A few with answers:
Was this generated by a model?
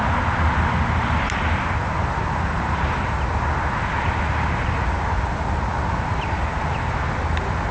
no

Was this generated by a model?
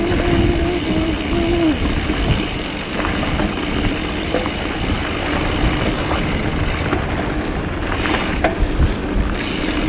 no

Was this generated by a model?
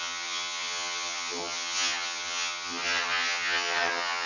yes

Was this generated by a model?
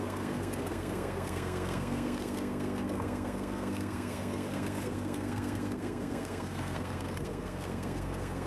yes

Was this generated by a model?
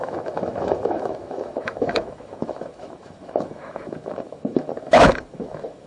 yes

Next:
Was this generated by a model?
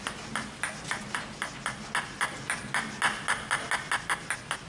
no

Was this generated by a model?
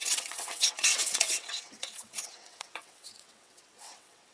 yes